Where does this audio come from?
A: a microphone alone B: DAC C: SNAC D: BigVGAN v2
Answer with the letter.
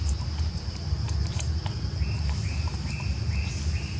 A